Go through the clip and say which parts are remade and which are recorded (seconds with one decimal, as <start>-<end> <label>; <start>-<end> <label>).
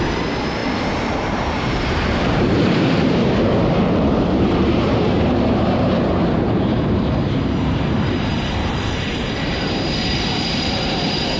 0.0-0.6 remade; 0.6-1.1 recorded; 1.1-11.4 remade